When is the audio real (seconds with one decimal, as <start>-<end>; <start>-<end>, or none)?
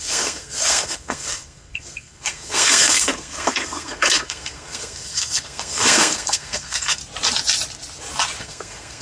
7.0-8.4